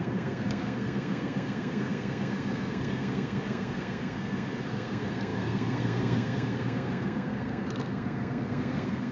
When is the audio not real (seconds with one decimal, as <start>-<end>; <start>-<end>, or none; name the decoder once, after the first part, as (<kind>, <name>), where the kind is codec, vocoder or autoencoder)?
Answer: 0.0-9.1 (codec, SNAC)